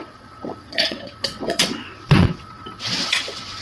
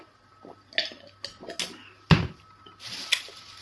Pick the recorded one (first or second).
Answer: second